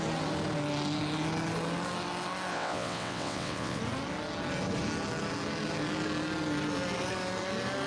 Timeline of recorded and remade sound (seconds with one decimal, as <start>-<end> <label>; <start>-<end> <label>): 0.0-2.5 recorded; 2.5-3.8 remade; 3.8-7.9 recorded